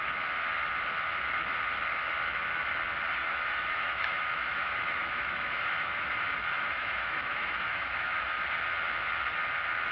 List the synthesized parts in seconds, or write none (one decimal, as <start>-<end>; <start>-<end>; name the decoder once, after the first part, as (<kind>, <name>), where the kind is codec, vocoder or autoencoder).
3.2-8.4 (autoencoder, DAC-VAE)